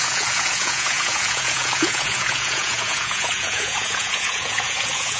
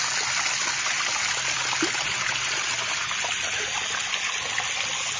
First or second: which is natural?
second